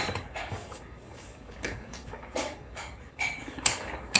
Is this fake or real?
fake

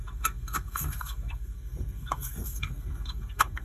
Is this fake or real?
fake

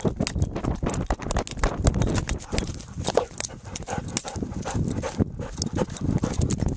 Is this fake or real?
real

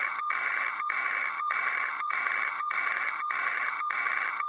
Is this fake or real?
fake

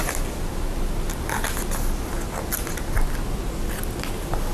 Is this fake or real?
real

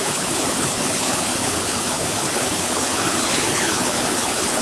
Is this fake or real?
fake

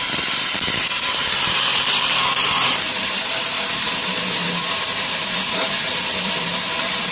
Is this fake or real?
fake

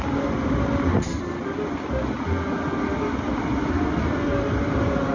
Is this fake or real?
real